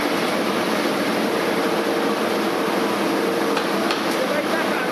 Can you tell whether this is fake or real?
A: fake